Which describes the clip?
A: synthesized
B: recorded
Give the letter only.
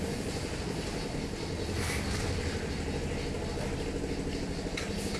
B